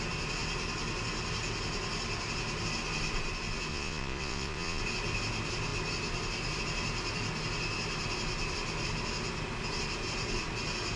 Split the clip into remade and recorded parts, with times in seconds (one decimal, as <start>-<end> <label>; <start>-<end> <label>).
0.0-3.7 recorded; 3.7-4.8 remade; 4.8-11.0 recorded